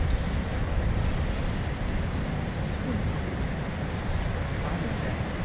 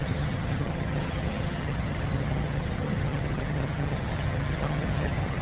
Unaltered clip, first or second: first